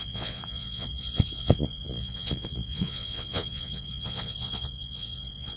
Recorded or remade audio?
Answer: remade